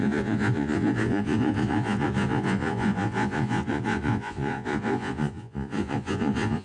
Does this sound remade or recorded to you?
remade